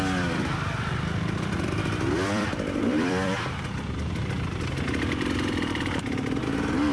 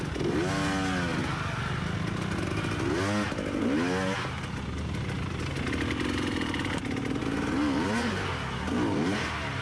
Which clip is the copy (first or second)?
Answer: first